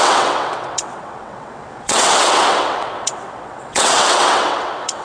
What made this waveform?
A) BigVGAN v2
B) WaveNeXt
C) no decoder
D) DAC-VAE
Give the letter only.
B